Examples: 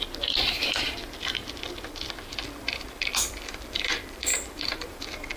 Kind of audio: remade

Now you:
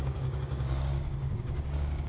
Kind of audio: remade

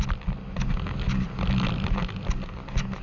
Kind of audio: recorded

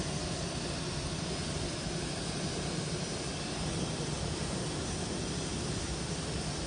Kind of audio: recorded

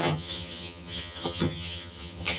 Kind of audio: remade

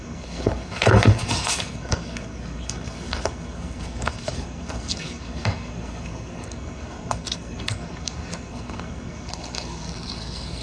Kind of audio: remade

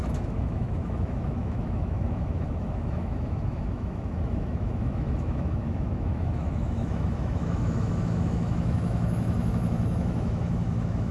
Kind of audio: remade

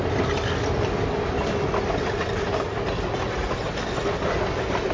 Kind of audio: recorded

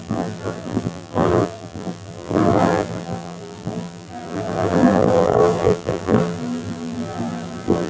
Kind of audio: remade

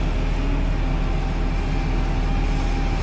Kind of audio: recorded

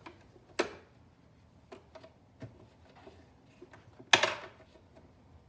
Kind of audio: recorded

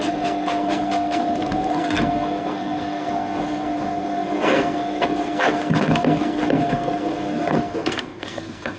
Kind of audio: remade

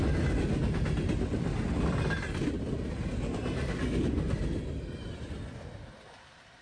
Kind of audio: recorded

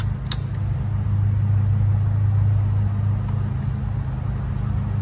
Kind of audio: recorded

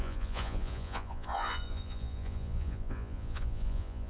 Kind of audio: remade